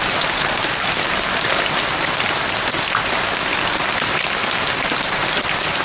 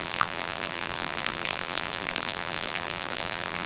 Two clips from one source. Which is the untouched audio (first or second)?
first